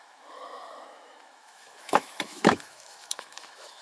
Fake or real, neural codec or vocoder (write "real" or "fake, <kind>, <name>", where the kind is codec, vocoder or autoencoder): fake, autoencoder, DAC-VAE